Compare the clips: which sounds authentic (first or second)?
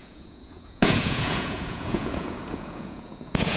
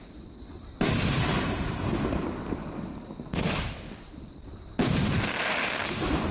second